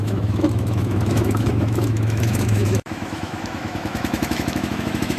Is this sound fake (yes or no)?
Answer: yes